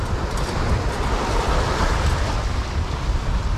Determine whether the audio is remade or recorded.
recorded